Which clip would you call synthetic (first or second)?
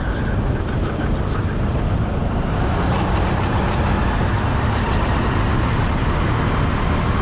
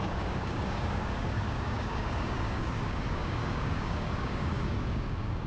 second